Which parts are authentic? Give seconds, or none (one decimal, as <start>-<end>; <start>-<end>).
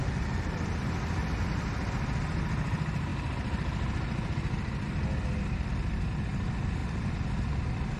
0.0-8.0